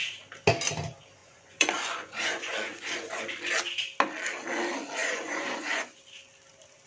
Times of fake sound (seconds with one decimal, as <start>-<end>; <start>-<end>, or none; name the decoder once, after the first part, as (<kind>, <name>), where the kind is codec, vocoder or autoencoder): 1.2-3.2 (vocoder, Vocos); 5.0-6.0